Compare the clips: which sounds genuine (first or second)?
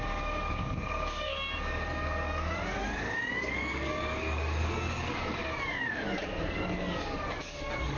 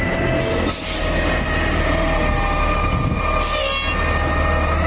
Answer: second